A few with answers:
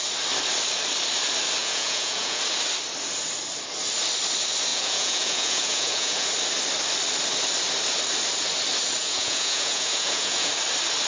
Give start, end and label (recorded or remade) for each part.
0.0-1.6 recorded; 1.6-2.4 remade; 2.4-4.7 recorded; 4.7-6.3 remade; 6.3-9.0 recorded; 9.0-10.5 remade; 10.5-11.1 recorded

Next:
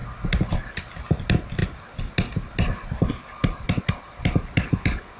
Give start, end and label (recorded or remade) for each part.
0.0-5.2 recorded

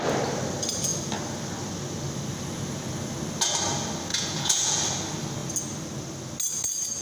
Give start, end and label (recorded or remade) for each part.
0.0-4.1 recorded; 4.1-4.8 remade; 4.8-7.0 recorded

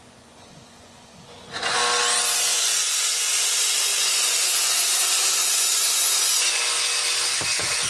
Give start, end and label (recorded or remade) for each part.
0.0-1.8 remade; 1.8-2.4 recorded; 2.4-6.7 remade; 6.7-7.9 recorded

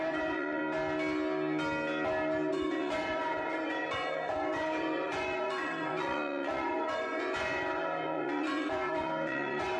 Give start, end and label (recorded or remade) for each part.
0.0-0.6 remade; 0.6-2.5 recorded; 2.5-9.8 remade

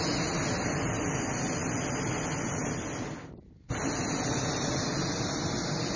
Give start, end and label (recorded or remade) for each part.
0.0-6.0 recorded

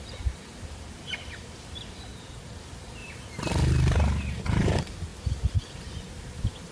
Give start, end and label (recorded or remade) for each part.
0.0-2.1 recorded; 2.1-2.6 remade; 2.6-6.7 recorded